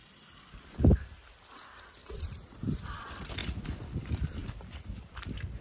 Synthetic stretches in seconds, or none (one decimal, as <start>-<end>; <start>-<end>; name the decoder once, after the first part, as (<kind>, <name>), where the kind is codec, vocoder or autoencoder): 0.0-5.6 (vocoder, BigVGAN v2)